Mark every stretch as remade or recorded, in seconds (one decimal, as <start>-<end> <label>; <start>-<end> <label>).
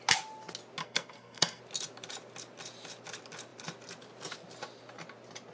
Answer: 0.0-0.8 recorded; 0.8-1.6 remade; 1.6-5.5 recorded